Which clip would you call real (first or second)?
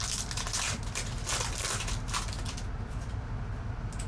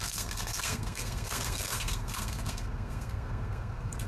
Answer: first